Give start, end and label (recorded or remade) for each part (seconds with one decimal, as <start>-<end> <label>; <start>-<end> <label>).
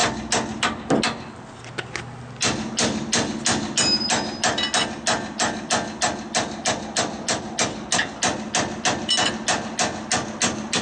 0.0-10.8 recorded